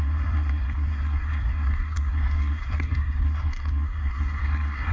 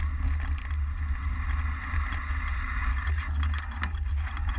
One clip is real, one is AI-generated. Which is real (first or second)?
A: second